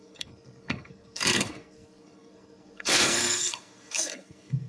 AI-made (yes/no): yes